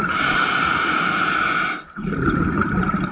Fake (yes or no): no